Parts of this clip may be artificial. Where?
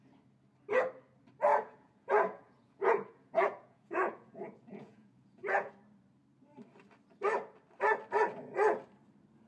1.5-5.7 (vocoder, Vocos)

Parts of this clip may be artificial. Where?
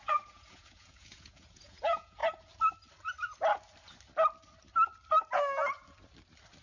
0.0-2.2 (vocoder, Vocos)